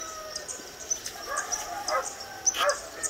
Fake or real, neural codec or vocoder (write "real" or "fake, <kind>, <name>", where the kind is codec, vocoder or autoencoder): real